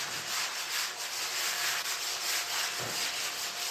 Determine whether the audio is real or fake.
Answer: real